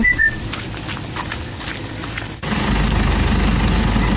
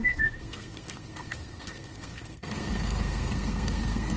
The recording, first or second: first